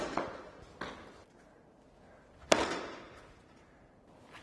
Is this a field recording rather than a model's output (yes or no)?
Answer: yes